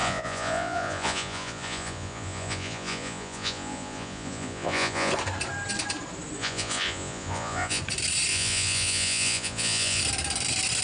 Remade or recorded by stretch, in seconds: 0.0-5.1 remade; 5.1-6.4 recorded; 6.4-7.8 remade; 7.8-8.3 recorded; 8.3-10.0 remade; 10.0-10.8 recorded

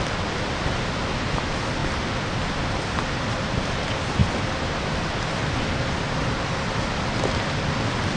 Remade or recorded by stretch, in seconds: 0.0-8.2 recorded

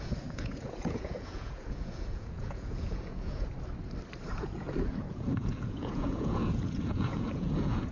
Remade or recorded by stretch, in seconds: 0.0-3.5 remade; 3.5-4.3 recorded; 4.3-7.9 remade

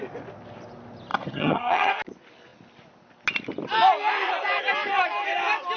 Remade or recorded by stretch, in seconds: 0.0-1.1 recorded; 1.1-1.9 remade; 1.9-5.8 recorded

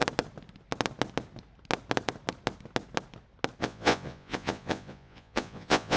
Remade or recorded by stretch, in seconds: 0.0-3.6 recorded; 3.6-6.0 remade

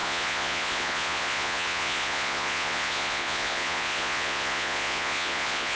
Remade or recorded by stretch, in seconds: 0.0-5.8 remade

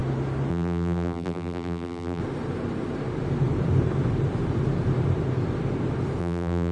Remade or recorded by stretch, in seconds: 0.0-0.5 recorded; 0.5-2.2 remade; 2.2-6.2 recorded; 6.2-6.7 remade